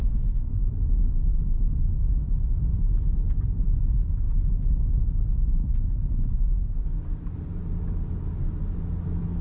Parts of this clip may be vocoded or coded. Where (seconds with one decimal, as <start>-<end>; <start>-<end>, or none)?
0.8-1.9